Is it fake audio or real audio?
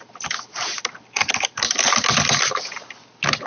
real